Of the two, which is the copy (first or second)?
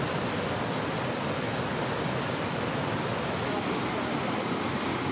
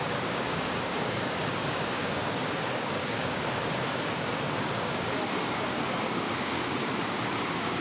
second